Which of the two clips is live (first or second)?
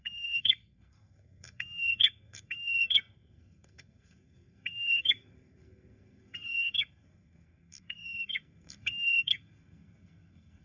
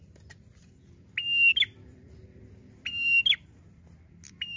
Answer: second